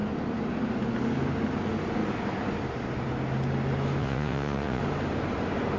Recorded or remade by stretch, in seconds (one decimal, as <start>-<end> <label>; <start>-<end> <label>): 0.0-4.0 recorded; 4.0-4.8 remade; 4.8-5.8 recorded